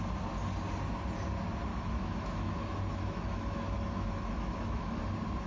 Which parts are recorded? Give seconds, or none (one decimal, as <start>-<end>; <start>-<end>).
0.0-1.7; 5.0-5.5